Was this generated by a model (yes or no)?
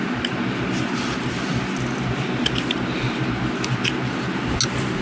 no